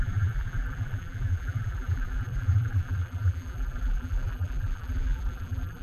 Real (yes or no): no